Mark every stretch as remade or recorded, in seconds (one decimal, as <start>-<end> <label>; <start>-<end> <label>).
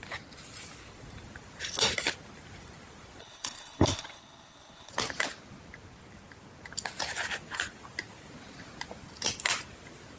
0.0-3.2 recorded; 3.2-4.9 remade; 4.9-10.2 recorded